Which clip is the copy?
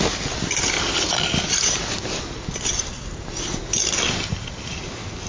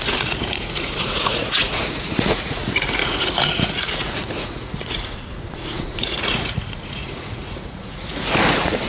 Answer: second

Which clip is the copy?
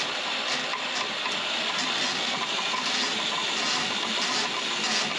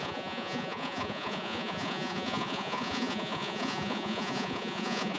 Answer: second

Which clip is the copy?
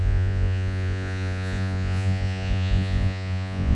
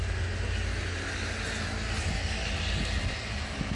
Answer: first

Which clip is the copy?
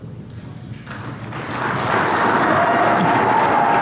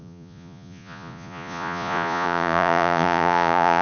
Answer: second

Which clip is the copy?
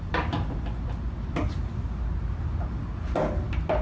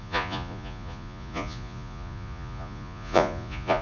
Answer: second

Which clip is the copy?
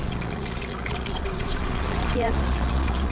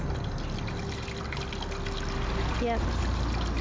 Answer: first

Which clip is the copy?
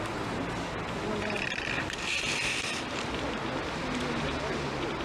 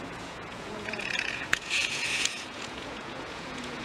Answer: second